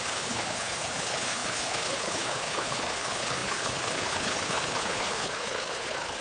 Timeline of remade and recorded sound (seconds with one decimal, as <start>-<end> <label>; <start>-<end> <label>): 0.0-6.2 remade